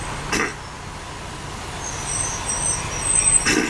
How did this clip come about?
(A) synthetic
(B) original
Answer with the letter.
B